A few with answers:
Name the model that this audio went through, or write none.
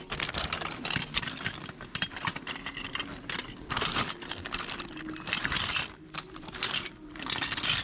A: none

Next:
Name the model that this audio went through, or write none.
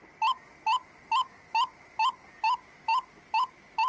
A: none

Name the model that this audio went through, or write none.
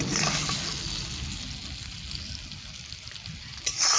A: none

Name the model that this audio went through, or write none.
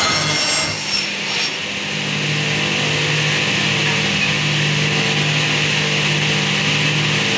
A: none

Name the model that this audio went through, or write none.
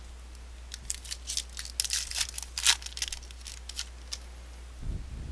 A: none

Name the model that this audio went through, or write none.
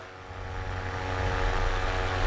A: none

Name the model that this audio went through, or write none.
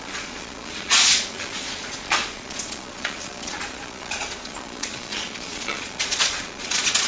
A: vocoder, Vocos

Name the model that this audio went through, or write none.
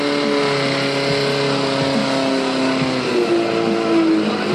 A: none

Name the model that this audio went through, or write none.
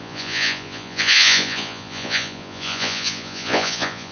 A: vocoder, Vocos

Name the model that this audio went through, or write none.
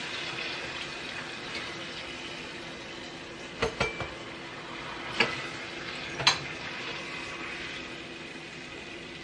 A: none